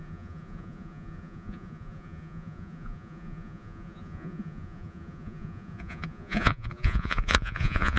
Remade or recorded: remade